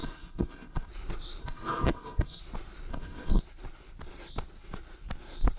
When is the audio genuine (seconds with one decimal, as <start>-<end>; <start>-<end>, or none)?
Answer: 0.9-1.4; 2.4-2.9; 3.4-5.6

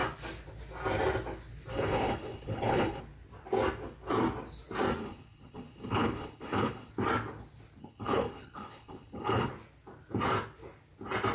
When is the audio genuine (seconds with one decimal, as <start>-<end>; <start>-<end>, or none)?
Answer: 0.0-1.7; 3.0-5.0; 6.9-7.8; 9.5-11.3

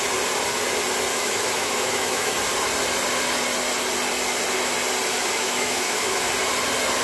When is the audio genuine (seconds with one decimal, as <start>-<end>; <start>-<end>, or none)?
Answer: 0.0-1.1; 2.3-5.4; 6.3-7.0

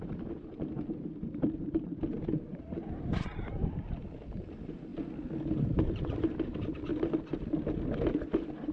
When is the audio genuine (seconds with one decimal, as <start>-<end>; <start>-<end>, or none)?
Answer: 2.8-4.0; 4.9-5.5; 6.9-8.2

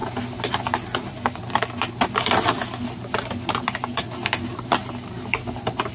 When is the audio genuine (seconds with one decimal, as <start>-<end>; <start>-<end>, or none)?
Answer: 0.0-5.9

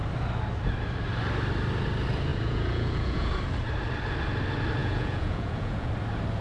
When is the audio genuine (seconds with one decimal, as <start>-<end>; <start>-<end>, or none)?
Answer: 0.0-2.3; 3.3-4.8; 5.9-6.4